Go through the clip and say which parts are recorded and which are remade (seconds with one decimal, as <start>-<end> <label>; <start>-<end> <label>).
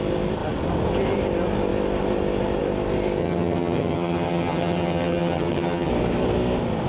0.0-3.2 recorded; 3.2-5.9 remade; 5.9-6.9 recorded